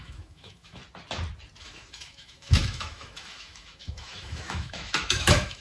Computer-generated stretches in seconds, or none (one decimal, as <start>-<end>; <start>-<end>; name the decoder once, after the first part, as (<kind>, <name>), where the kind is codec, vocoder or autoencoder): 0.0-0.8 (autoencoder, DAC-VAE); 1.6-5.6